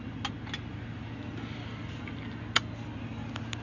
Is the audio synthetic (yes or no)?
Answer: no